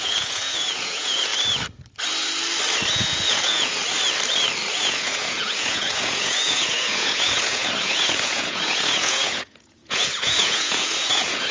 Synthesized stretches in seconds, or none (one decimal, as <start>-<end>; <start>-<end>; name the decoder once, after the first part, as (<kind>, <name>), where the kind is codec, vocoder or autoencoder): 0.0-1.3 (vocoder, Vocos); 2.9-3.8; 4.7-11.5